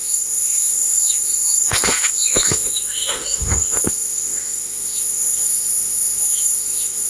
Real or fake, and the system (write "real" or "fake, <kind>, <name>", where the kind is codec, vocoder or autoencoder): fake, autoencoder, DAC-VAE